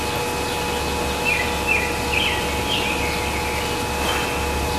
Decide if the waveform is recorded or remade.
recorded